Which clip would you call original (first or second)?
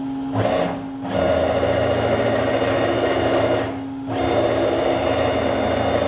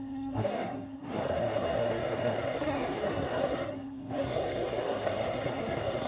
first